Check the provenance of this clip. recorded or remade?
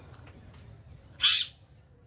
recorded